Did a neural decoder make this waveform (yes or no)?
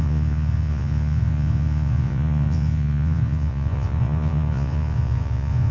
yes